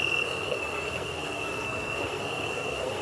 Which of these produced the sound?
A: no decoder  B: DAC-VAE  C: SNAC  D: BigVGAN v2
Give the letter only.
C